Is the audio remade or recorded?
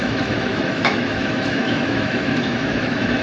remade